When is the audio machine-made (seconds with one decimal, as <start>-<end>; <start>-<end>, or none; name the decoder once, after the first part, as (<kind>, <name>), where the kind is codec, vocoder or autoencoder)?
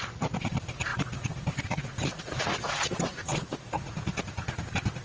0.0-5.0 (vocoder, Vocos)